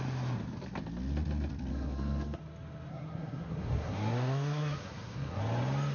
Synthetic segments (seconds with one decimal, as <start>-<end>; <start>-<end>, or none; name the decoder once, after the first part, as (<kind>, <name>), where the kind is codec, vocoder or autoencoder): 1.7-2.4 (codec, SNAC); 2.9-5.4

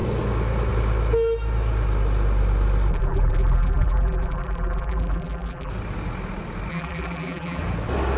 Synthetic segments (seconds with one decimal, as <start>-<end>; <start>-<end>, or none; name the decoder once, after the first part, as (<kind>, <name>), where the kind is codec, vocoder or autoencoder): 2.9-5.7 (vocoder, BigVGAN v2); 6.7-7.6

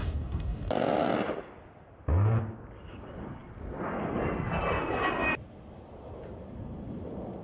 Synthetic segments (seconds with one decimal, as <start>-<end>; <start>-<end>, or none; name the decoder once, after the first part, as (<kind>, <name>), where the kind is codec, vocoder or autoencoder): 0.0-0.7 (codec, DAC)